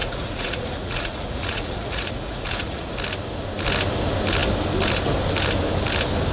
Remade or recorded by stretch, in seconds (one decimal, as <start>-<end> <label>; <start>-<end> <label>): 0.0-2.9 remade; 2.9-6.3 recorded